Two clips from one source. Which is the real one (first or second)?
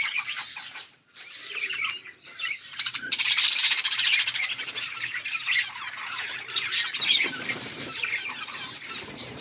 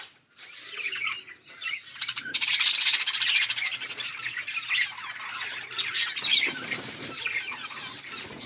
second